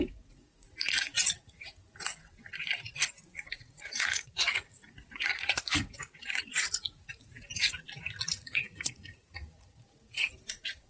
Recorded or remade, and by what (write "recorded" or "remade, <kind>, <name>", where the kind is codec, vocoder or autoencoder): remade, vocoder, Vocos